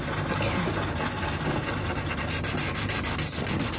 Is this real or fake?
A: real